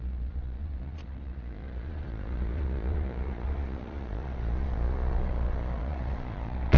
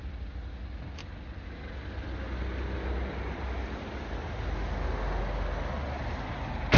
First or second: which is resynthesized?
first